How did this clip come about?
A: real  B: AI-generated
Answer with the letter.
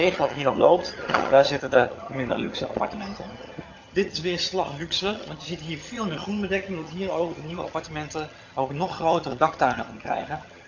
B